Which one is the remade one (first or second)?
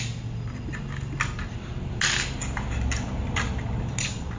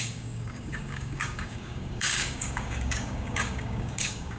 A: second